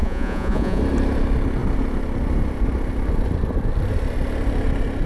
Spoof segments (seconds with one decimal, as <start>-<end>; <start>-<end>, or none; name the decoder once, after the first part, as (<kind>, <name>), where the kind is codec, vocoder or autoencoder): 0.0-0.8 (vocoder, Vocos)